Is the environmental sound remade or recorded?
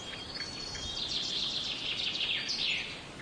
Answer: recorded